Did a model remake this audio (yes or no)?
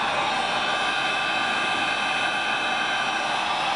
no